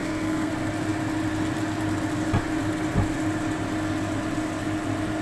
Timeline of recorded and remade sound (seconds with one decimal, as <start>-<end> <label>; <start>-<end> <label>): 0.0-0.5 remade; 0.5-5.2 recorded